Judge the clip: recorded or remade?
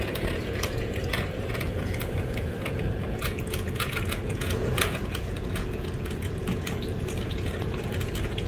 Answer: remade